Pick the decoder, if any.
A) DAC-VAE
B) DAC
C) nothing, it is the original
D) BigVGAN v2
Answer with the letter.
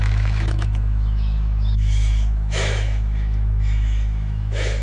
A